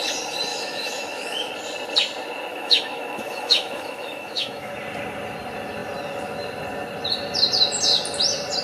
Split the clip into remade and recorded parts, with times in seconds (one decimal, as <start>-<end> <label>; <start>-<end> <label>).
0.0-0.5 recorded; 0.5-1.5 remade; 1.5-2.5 recorded; 2.5-4.7 remade; 4.7-8.6 recorded